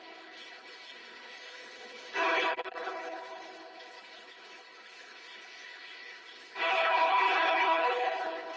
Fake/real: fake